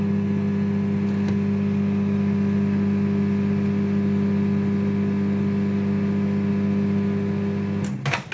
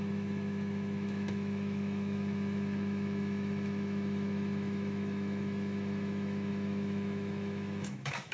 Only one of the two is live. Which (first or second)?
first